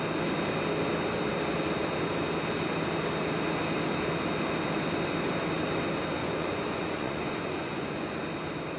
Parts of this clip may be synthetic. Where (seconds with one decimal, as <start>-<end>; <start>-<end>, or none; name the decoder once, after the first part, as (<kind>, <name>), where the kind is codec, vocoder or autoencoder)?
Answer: 6.2-8.2 (vocoder, Vocos)